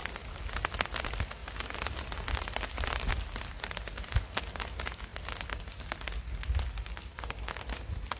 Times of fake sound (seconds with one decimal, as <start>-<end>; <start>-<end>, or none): 0.0-0.6; 1.4-3.1